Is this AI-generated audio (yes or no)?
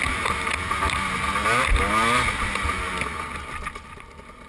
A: no